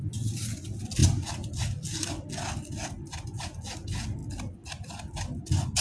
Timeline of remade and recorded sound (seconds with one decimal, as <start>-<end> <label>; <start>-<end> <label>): 0.0-5.8 recorded